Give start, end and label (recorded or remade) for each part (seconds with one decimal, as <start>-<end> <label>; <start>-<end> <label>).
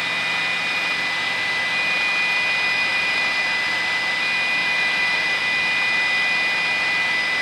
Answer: 0.0-2.9 recorded; 2.9-3.4 remade; 3.4-4.6 recorded; 4.6-5.4 remade; 5.4-7.4 recorded